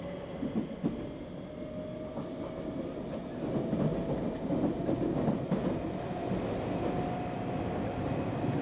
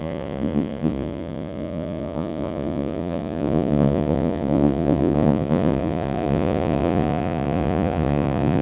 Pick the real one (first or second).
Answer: first